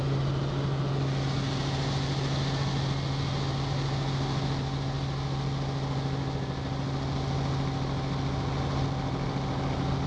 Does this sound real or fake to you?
real